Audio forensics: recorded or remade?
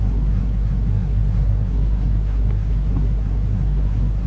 remade